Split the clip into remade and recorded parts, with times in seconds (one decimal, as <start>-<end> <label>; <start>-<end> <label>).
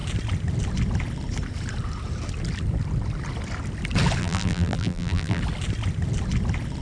0.0-4.2 recorded; 4.2-5.4 remade; 5.4-6.8 recorded